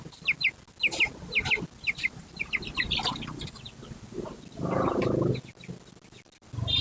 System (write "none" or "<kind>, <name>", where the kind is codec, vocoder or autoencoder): none